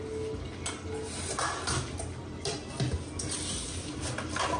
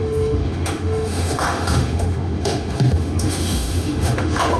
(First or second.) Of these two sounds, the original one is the first